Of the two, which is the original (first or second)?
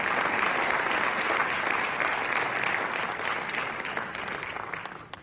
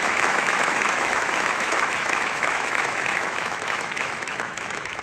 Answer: first